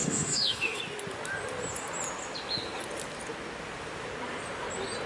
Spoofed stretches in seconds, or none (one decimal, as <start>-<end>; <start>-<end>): 0.0-0.8